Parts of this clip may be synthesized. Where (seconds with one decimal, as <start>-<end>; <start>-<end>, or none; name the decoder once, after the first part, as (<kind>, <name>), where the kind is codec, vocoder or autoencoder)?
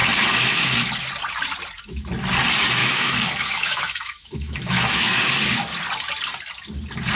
2.8-5.2 (autoencoder, DAC-VAE)